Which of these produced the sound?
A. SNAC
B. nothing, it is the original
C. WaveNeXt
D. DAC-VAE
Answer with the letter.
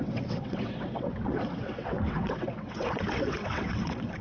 C